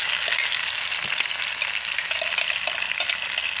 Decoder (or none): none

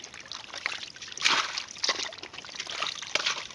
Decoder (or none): none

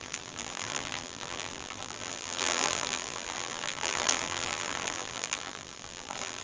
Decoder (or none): vocoder, BigVGAN v2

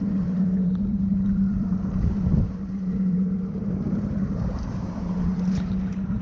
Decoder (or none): vocoder, BigVGAN v2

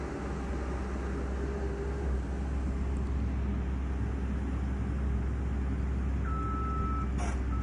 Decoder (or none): none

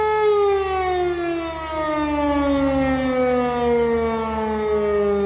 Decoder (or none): none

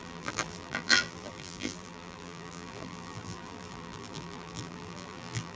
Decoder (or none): vocoder, BigVGAN v2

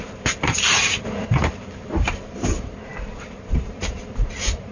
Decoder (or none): vocoder, BigVGAN v2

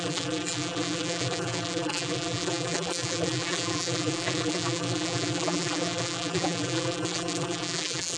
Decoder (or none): vocoder, BigVGAN v2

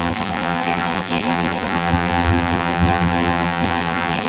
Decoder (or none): vocoder, BigVGAN v2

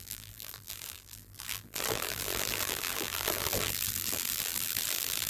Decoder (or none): vocoder, BigVGAN v2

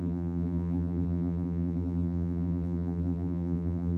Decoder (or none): vocoder, BigVGAN v2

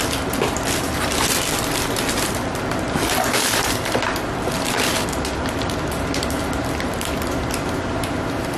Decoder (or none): vocoder, BigVGAN v2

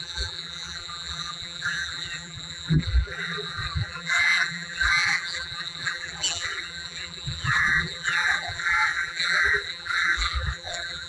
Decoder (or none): vocoder, BigVGAN v2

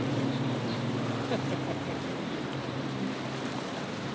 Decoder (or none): vocoder, BigVGAN v2